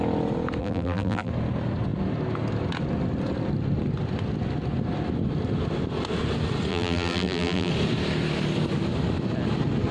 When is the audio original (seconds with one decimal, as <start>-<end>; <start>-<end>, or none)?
0.0-0.6; 1.3-6.7; 7.7-9.9